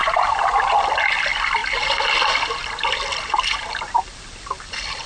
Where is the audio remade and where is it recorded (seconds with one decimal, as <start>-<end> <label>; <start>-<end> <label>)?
0.0-0.6 recorded; 0.6-5.1 remade